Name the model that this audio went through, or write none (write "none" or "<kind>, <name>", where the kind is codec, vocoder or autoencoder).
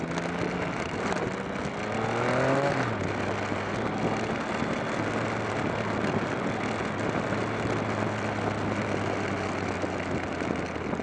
none